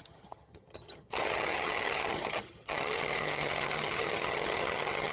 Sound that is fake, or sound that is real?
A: fake